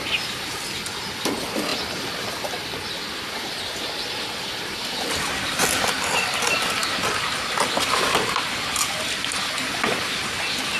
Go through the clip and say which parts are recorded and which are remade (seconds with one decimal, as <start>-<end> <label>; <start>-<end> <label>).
0.0-10.8 recorded